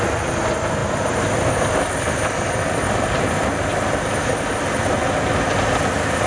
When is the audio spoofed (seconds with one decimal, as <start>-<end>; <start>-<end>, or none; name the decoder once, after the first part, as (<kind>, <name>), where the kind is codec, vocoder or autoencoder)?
none